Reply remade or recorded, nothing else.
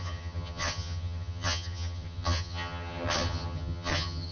remade